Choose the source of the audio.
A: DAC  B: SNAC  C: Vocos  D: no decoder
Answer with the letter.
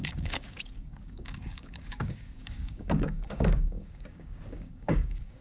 A